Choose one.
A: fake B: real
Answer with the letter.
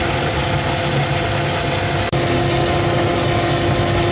B